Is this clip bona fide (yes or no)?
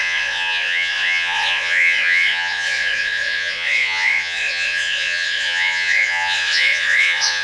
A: no